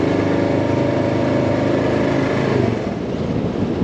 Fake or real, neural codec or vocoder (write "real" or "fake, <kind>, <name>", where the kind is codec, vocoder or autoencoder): real